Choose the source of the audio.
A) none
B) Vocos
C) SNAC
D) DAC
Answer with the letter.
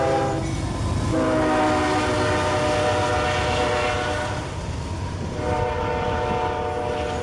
A